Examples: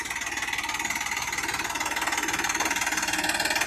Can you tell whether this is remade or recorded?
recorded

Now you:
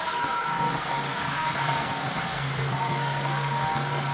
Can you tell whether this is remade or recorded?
remade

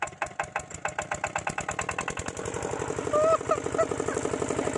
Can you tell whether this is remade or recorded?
recorded